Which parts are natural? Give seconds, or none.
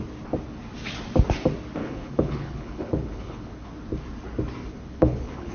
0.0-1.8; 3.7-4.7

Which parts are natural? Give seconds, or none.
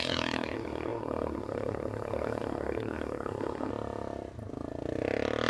3.7-5.5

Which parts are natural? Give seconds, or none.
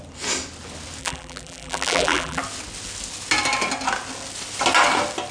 0.0-1.0; 2.4-5.3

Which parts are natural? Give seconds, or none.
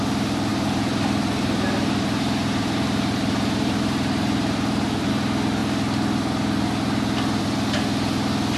0.0-0.5; 5.1-8.6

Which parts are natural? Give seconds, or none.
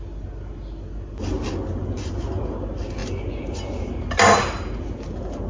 0.0-5.5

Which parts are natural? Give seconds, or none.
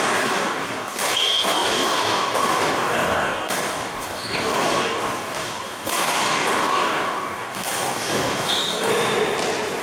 8.9-9.8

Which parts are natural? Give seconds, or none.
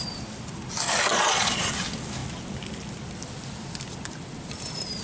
0.0-1.1; 1.7-5.0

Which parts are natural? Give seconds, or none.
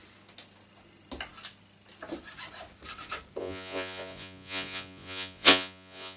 0.0-3.4